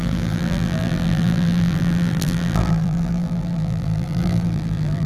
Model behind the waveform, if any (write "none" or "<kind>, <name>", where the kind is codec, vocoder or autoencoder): vocoder, BigVGAN v2